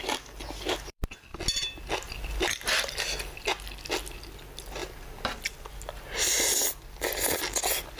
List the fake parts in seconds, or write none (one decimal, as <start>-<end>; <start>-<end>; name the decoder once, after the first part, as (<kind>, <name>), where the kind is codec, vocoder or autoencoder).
none